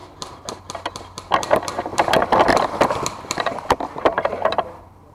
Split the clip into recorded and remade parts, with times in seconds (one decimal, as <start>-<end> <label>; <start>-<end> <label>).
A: 0.0-1.9 recorded; 1.9-5.1 remade